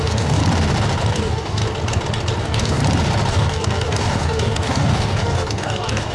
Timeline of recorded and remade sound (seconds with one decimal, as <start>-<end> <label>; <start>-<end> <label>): 0.0-0.4 remade; 0.4-1.1 recorded; 1.1-1.6 remade; 1.6-2.4 recorded; 2.4-2.8 remade; 2.8-3.3 recorded; 3.3-6.1 remade